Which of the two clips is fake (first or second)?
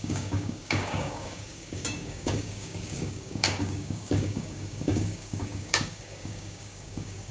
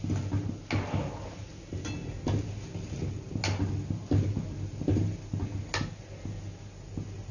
first